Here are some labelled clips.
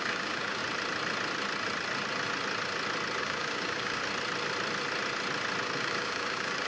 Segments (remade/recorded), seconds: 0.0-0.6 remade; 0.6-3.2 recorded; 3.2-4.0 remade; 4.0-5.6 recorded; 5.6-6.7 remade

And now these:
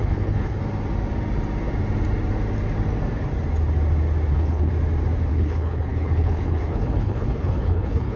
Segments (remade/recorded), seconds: 0.0-0.6 remade; 0.6-4.3 recorded; 4.3-4.7 remade; 4.7-5.3 recorded; 5.3-8.2 remade

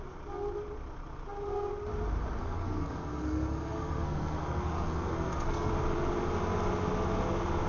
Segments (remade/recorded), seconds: 0.0-2.4 recorded; 2.4-5.7 remade; 5.7-7.7 recorded

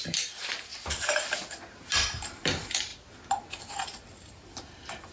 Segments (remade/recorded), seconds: 0.0-0.7 remade; 0.7-1.9 recorded; 1.9-2.9 remade; 2.9-3.6 recorded; 3.6-5.1 remade

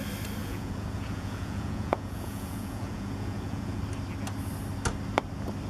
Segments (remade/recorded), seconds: 0.0-0.4 recorded; 0.4-3.8 remade; 3.8-5.7 recorded

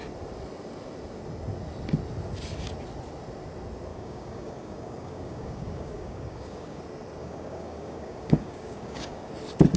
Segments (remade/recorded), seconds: 0.0-3.9 recorded; 3.9-6.8 remade; 6.8-7.2 recorded; 7.2-9.3 remade; 9.3-9.8 recorded